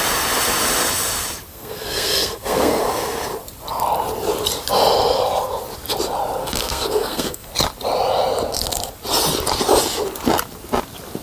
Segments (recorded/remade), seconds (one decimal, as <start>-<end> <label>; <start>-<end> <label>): 0.0-1.5 recorded; 1.5-2.8 remade; 2.8-6.4 recorded; 6.4-7.5 remade; 7.5-11.2 recorded